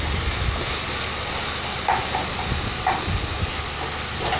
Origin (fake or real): real